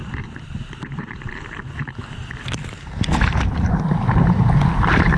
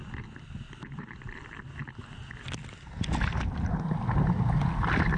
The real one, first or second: second